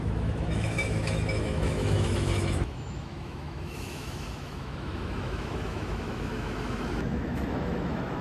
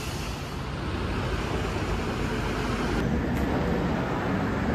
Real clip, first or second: second